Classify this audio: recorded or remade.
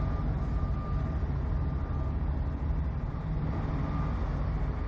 recorded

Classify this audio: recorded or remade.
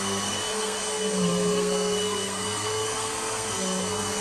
remade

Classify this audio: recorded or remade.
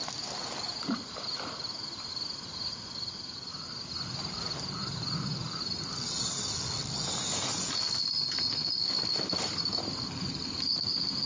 recorded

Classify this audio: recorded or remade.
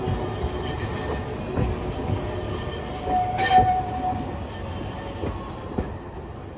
recorded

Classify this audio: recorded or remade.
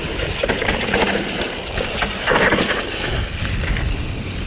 recorded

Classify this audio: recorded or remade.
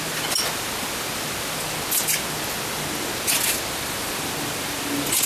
recorded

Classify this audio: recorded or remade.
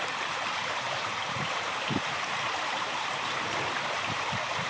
remade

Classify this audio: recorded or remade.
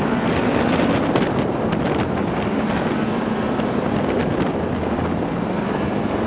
recorded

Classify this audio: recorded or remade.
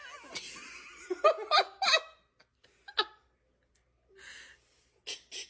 recorded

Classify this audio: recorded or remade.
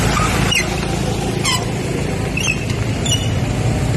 remade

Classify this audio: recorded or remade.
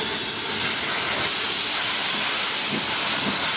recorded